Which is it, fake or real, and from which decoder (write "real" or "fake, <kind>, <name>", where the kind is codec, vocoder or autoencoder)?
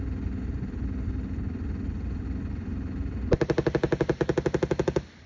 real